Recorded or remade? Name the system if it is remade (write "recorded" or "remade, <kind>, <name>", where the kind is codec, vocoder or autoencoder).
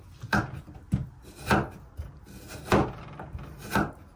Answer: recorded